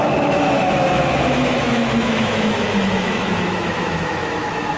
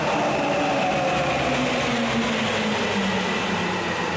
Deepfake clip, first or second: first